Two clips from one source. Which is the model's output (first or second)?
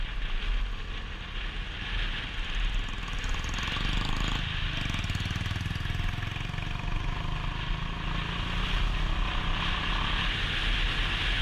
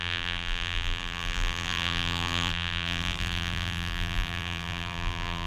second